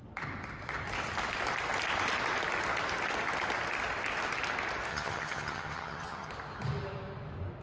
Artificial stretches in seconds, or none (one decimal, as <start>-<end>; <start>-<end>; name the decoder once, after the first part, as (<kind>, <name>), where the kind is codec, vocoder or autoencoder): 4.9-6.3 (vocoder, HiFi-GAN)